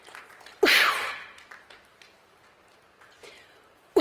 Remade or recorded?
remade